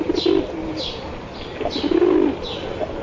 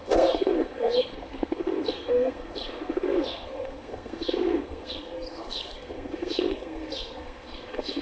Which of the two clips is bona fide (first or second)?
first